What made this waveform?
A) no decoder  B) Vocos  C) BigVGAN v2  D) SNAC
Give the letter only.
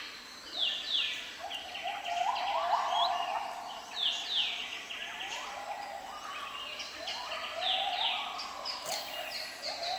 A